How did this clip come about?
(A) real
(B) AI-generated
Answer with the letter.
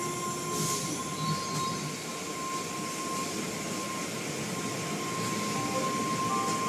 A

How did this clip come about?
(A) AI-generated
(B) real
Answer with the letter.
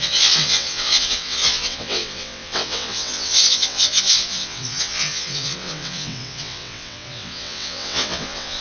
A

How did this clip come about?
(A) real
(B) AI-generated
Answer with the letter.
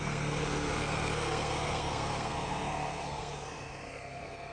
B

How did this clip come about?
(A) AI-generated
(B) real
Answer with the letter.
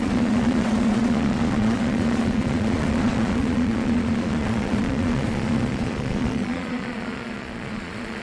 A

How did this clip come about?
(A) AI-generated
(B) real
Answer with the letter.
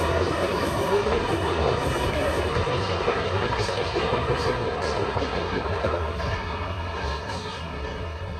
A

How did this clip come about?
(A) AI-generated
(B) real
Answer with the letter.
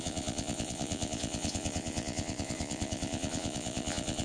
A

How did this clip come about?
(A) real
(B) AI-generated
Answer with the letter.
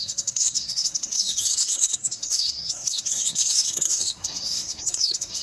B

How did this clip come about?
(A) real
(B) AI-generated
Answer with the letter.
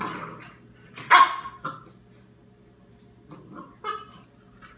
A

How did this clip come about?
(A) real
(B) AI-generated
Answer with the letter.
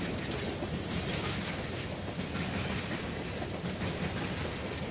A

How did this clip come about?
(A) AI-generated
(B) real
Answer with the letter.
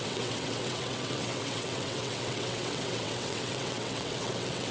A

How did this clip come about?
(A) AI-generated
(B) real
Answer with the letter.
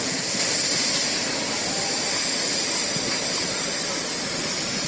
B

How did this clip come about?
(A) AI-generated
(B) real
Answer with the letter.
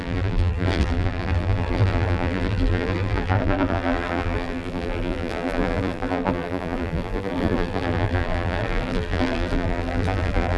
A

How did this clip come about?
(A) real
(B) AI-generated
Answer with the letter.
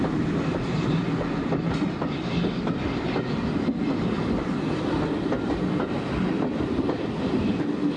A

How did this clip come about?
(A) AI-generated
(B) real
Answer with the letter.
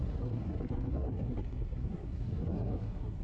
A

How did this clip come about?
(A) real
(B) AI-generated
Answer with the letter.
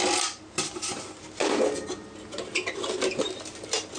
A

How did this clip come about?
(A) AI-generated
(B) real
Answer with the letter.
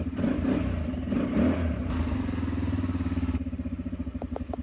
B